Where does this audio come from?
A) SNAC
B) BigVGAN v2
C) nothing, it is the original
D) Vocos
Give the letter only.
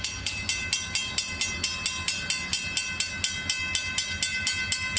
C